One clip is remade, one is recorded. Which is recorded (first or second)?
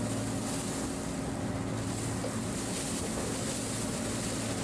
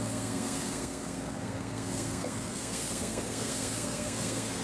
first